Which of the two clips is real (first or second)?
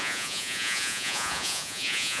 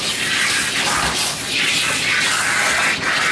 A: second